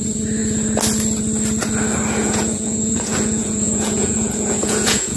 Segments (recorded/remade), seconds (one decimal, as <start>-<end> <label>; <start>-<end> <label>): 0.0-2.2 recorded; 2.2-5.2 remade